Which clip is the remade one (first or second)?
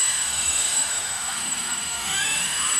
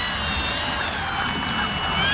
first